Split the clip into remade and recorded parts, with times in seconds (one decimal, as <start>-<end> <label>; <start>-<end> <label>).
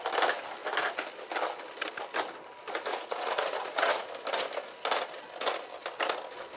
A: 0.0-2.9 recorded; 2.9-4.1 remade; 4.1-6.6 recorded